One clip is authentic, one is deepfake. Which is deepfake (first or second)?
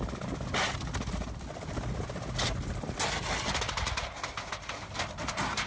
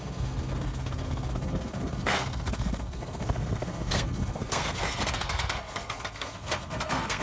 second